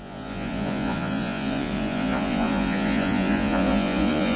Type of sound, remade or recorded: remade